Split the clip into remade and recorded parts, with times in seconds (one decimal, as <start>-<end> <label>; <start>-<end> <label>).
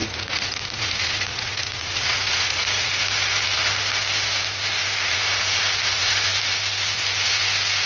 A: 0.0-2.9 remade; 2.9-7.9 recorded